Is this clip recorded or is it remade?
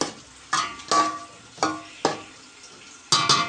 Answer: recorded